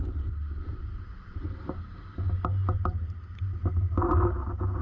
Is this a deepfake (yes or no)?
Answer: no